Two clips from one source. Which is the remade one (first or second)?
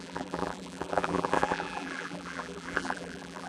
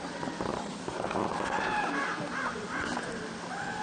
first